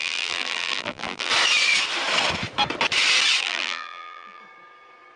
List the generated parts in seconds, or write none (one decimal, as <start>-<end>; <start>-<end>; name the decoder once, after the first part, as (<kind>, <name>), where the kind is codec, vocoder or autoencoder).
0.0-1.3 (vocoder, BigVGAN v2); 3.4-4.4